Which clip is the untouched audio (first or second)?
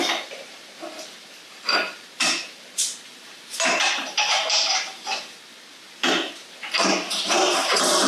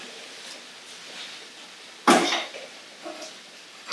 second